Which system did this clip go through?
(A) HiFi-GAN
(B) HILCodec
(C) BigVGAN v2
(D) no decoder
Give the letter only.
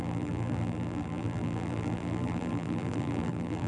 C